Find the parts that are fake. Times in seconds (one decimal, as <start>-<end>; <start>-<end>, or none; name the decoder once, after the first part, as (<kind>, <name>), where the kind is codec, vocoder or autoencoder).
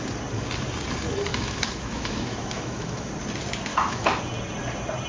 1.3-3.1 (autoencoder, DAC-VAE); 3.7-4.2